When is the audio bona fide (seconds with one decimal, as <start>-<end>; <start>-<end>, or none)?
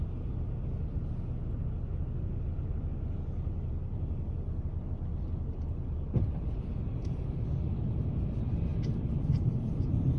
0.0-10.2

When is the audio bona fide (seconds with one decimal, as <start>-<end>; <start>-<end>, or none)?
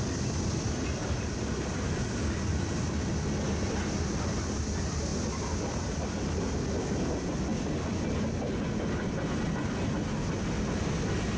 0.0-1.0; 2.0-2.5; 3.1-11.4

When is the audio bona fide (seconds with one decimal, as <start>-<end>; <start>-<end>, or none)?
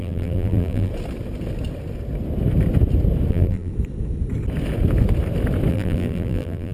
0.9-3.3; 3.7-5.7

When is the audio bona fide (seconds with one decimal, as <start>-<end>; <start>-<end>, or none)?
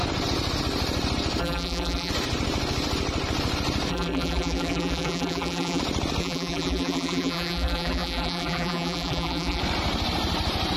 0.0-1.4; 2.1-3.9; 5.8-6.2; 9.6-10.8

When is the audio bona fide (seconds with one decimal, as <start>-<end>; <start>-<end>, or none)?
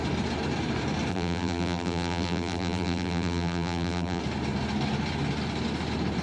0.0-1.1; 4.2-6.2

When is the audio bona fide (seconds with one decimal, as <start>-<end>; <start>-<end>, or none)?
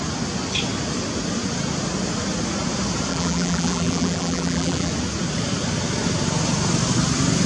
0.0-3.1; 4.9-7.5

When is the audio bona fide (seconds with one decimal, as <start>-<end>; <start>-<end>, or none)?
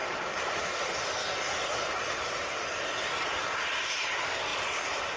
0.7-2.0; 3.8-4.5